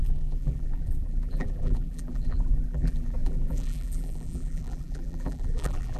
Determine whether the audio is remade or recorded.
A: remade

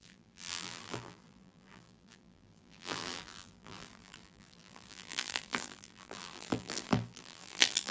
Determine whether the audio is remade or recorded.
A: remade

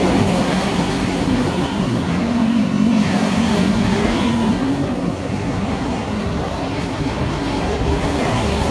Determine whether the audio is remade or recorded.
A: remade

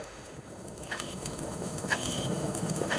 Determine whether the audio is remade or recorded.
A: remade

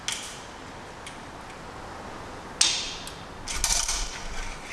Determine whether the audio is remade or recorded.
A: recorded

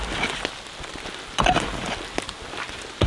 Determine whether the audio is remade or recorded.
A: recorded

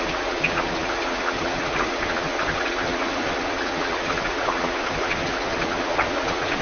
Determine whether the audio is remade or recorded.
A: remade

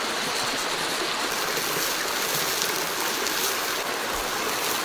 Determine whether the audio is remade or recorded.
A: recorded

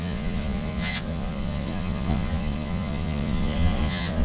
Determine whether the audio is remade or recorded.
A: remade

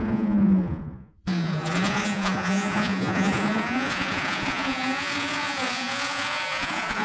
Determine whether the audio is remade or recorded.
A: remade